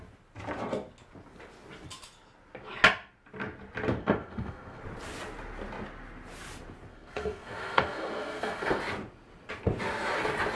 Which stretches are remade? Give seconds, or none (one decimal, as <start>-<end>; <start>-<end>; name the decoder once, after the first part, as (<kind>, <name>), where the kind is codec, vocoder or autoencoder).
4.0-4.8 (codec, SNAC); 6.9-8.8